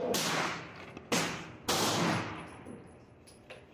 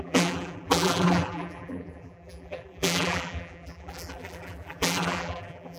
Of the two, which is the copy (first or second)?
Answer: second